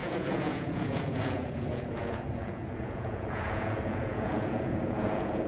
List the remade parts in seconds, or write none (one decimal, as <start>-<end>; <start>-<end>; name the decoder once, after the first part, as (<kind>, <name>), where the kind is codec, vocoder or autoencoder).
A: 0.0-5.5 (vocoder, Vocos)